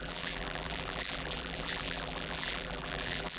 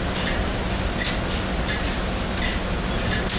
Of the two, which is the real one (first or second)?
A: second